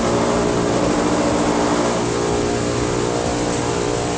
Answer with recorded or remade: recorded